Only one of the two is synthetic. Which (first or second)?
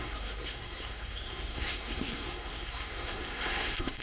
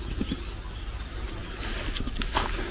first